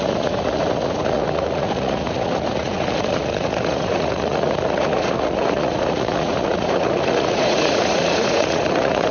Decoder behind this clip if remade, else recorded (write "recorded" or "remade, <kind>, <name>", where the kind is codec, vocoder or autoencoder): remade, vocoder, Vocos